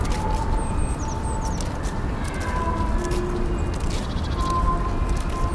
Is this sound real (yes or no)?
yes